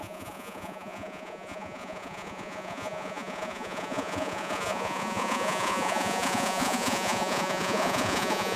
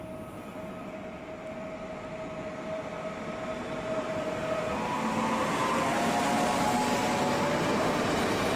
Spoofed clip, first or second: first